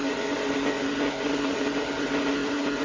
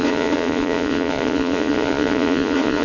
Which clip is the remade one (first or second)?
second